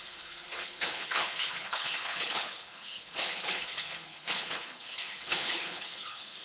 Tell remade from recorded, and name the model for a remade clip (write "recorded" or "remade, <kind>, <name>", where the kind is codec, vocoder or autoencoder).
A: remade, codec, HILCodec